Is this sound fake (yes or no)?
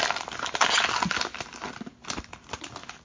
no